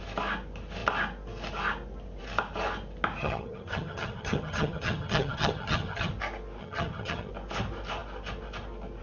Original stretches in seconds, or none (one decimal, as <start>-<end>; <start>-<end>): 0.0-3.2; 6.1-6.6; 7.3-9.0